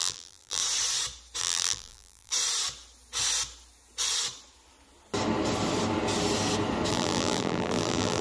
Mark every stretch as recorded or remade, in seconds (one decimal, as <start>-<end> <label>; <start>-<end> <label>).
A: 0.0-0.6 remade; 0.6-1.4 recorded; 1.4-2.3 remade; 2.3-6.9 recorded; 6.9-8.2 remade